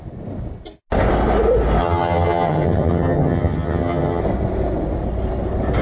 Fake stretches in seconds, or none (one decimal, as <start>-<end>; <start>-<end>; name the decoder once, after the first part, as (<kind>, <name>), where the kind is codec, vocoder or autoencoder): 1.8-4.2 (vocoder, HiFi-GAN)